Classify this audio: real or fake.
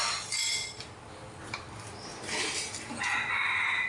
real